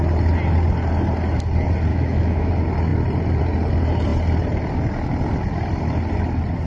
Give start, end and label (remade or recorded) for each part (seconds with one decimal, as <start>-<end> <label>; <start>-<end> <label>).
0.0-1.9 recorded; 1.9-2.5 remade; 2.5-6.7 recorded